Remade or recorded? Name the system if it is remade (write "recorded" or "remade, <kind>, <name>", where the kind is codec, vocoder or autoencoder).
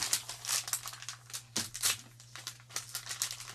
recorded